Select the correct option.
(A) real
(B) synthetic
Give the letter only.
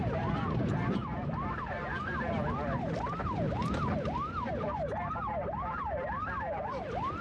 B